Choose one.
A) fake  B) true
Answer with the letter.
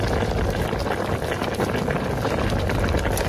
B